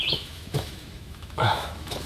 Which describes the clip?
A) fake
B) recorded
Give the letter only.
A